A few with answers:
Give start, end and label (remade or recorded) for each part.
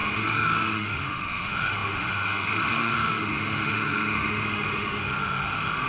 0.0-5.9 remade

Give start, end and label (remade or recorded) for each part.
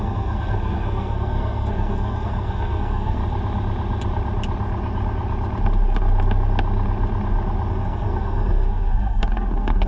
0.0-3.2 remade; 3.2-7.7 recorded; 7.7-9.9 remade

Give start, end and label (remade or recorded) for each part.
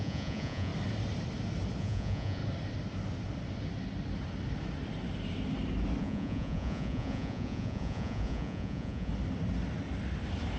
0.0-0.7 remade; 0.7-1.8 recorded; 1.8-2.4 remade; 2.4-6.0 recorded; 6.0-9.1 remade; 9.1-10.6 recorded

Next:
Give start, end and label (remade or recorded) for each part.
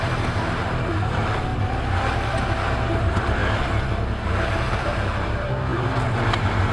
0.0-1.5 remade; 1.5-2.9 recorded; 2.9-3.4 remade; 3.4-4.7 recorded; 4.7-6.7 remade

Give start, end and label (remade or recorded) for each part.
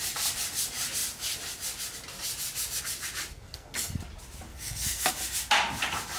0.0-3.3 recorded; 3.3-4.0 remade; 4.0-4.5 recorded; 4.5-5.1 remade; 5.1-6.2 recorded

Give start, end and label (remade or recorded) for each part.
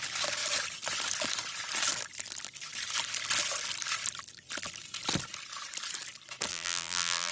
0.0-6.5 recorded; 6.5-7.3 remade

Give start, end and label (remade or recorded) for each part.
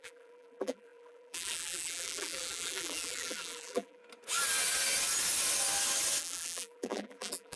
0.0-4.0 remade; 4.0-6.2 recorded; 6.2-7.6 remade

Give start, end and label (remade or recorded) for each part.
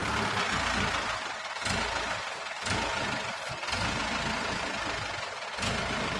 0.0-6.2 recorded